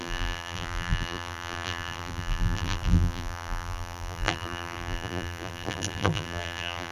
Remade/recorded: remade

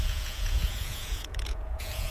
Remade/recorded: remade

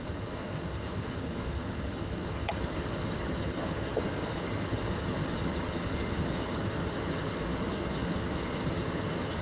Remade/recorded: remade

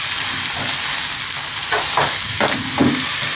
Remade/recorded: recorded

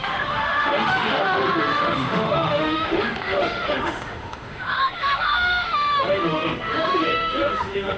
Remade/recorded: remade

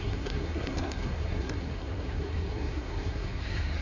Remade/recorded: remade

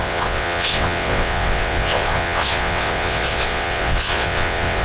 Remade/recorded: remade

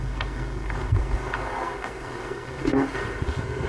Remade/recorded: remade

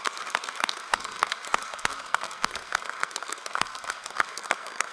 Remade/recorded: remade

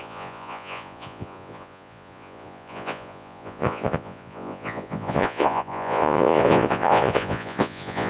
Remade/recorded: remade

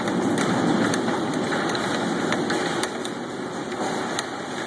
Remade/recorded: recorded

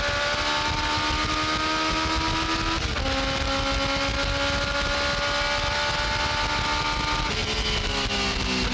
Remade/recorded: recorded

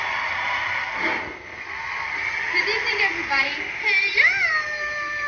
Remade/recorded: recorded